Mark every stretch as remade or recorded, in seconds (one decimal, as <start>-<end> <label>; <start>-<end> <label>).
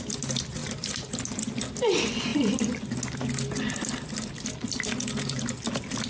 0.0-0.6 recorded; 0.6-1.2 remade; 1.2-6.1 recorded